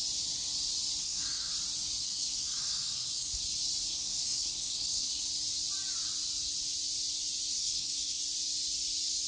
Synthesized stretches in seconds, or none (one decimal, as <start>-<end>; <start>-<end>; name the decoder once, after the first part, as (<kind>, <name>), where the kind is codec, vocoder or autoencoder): 1.0-1.5 (codec, SNAC); 2.0-3.4; 3.9-5.2; 7.5-8.2